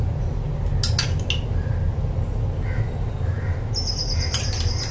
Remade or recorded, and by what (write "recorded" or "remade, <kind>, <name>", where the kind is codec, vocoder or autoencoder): recorded